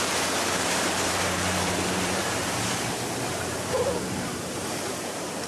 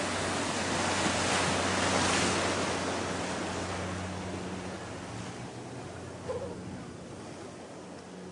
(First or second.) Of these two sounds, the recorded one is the second